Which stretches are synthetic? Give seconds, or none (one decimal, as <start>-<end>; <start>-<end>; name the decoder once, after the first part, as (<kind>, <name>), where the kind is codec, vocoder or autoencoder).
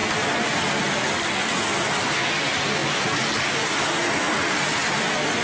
none